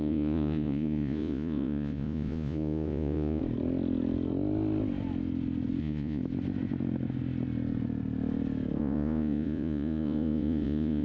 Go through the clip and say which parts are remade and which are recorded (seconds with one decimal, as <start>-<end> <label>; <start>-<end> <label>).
0.0-3.4 remade; 3.4-5.8 recorded; 5.8-6.2 remade; 6.2-8.8 recorded; 8.8-11.0 remade